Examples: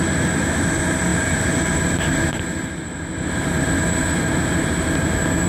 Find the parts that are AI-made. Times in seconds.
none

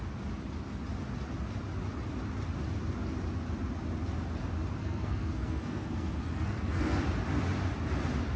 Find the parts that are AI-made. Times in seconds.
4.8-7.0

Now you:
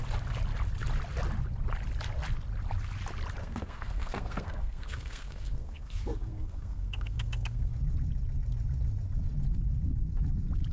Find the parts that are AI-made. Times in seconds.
3.4-7.7